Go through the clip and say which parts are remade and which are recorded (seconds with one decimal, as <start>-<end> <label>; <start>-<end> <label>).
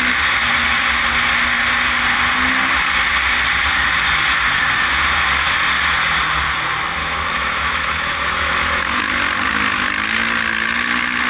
0.0-7.0 recorded; 7.0-9.0 remade; 9.0-11.3 recorded